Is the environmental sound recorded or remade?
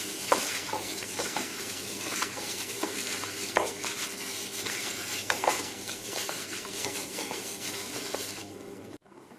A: remade